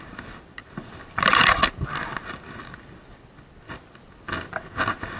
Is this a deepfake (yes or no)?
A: no